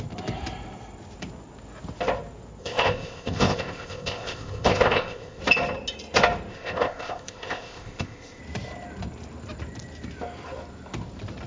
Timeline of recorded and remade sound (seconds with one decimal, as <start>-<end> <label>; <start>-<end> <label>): 0.0-2.6 recorded; 2.6-5.4 remade; 5.4-6.5 recorded; 6.5-8.4 remade; 8.4-11.5 recorded